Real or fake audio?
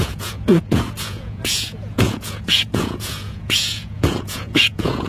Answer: fake